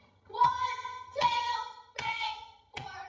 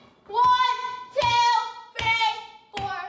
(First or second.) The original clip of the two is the second